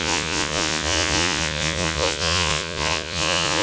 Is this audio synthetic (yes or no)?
yes